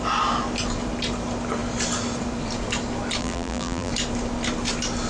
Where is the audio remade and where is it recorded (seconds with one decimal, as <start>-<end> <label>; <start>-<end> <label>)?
0.0-3.2 recorded; 3.2-3.9 remade; 3.9-5.1 recorded